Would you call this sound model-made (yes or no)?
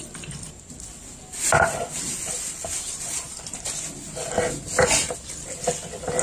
no